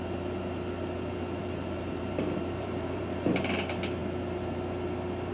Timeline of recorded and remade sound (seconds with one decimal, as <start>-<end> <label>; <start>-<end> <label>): 0.0-1.4 recorded; 1.4-3.0 remade; 3.0-5.3 recorded